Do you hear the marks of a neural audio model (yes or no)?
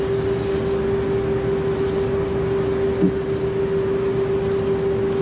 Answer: no